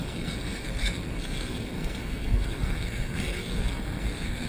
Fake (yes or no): yes